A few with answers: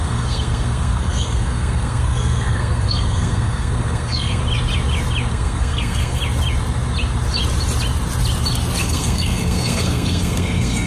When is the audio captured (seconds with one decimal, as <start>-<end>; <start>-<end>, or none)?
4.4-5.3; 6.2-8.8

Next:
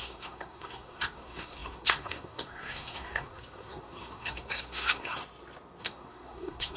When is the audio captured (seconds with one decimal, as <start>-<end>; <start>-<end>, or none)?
5.2-5.8

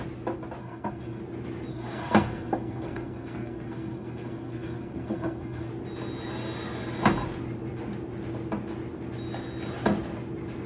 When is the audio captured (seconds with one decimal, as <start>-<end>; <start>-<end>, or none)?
0.0-0.6; 1.2-1.7; 5.7-10.7